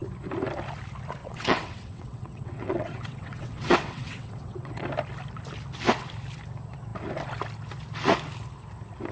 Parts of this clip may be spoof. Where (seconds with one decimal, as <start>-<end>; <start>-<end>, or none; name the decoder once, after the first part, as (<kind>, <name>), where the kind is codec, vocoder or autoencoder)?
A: 1.2-4.8 (vocoder, WaveNeXt)